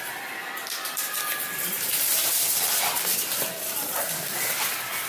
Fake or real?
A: fake